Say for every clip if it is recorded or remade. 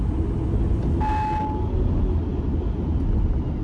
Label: recorded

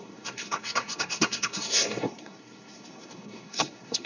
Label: remade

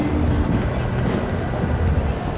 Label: recorded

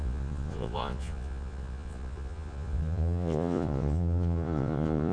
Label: remade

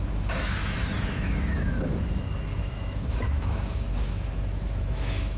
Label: remade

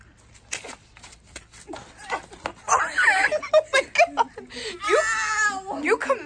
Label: recorded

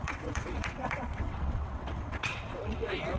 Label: remade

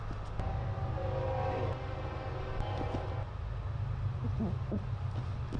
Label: recorded